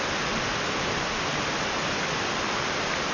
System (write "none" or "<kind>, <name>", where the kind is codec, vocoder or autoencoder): none